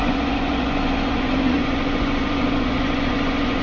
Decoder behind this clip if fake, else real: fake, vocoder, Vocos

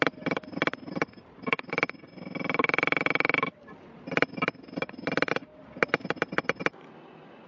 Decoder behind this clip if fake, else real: real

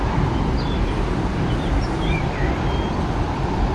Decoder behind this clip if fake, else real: real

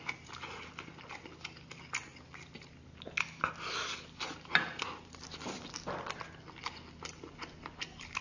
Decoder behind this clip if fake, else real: real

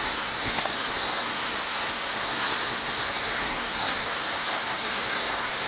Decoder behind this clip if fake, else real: fake, codec, SNAC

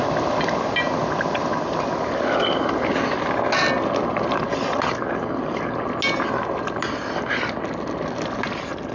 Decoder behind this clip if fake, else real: real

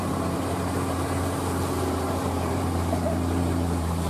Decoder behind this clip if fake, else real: fake, vocoder, BigVGAN v2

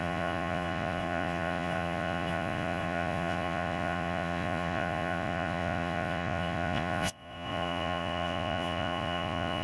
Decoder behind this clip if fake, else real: fake, vocoder, Vocos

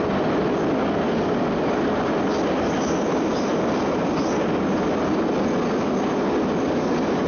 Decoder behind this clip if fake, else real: real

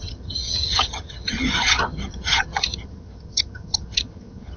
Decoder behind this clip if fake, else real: fake, vocoder, HiFi-GAN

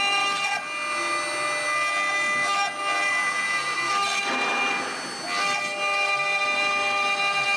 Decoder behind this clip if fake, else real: real